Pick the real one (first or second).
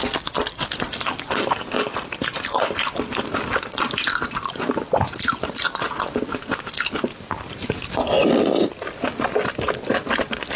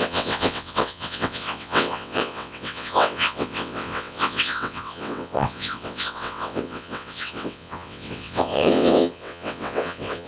first